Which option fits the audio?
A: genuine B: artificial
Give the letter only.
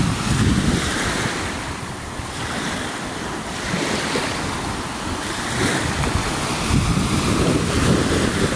B